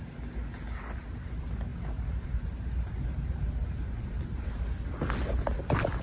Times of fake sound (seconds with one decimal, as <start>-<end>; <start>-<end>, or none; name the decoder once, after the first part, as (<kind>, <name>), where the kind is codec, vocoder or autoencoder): 1.7-4.6 (vocoder, BigVGAN v2)